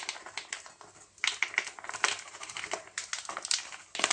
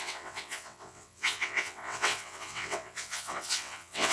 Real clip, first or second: first